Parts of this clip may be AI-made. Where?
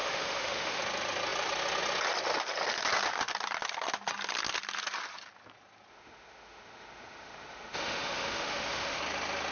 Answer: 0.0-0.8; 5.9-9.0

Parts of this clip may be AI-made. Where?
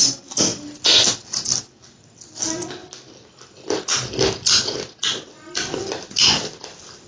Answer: none